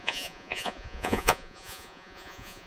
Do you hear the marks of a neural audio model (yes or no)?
yes